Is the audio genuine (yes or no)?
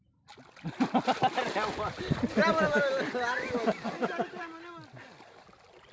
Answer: yes